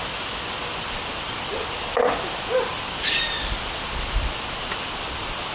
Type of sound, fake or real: real